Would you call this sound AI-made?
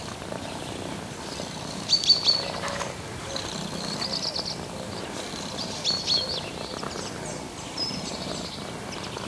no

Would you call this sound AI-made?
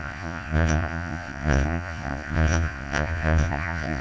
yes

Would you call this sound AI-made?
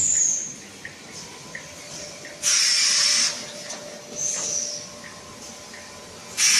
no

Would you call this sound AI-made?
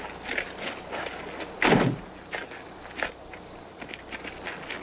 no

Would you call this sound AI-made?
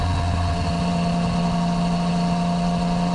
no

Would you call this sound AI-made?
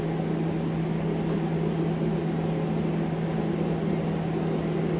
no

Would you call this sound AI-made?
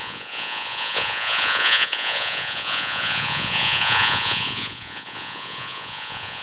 yes